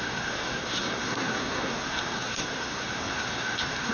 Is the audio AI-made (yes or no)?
yes